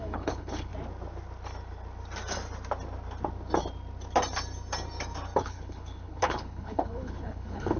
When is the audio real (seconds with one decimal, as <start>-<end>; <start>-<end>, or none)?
0.7-5.4